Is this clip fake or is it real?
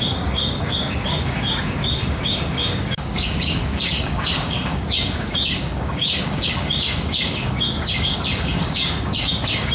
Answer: fake